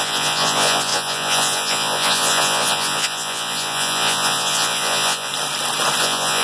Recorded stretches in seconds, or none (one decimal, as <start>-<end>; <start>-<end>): 5.3-6.0